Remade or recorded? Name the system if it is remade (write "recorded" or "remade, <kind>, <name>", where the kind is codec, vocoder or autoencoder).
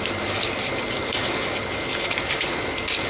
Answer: recorded